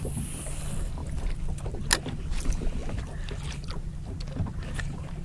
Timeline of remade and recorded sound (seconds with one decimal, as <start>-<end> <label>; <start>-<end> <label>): 0.0-5.2 recorded